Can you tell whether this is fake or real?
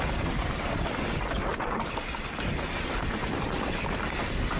real